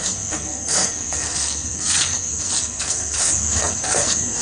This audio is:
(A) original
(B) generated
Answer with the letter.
B